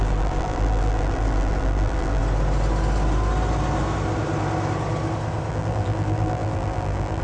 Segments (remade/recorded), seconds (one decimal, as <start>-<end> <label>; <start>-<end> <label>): 0.0-2.2 remade; 2.2-5.5 recorded; 5.5-7.2 remade